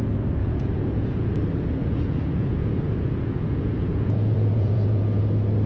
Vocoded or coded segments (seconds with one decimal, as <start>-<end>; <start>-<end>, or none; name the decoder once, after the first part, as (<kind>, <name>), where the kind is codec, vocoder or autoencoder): 0.4-1.3 (vocoder, Vocos); 1.8-5.2